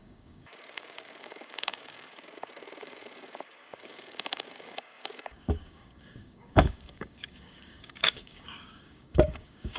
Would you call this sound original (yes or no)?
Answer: no